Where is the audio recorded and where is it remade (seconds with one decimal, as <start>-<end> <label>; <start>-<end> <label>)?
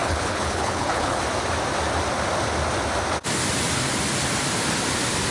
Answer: 0.0-1.2 remade; 1.2-5.3 recorded